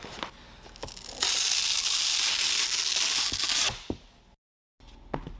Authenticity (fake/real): real